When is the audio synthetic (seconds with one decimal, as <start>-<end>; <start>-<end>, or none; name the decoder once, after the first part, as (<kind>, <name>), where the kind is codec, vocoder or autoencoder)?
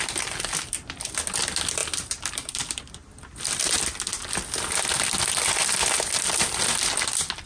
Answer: none